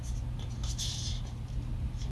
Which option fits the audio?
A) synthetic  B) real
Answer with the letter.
B